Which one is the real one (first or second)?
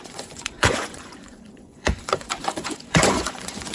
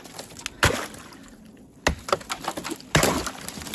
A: second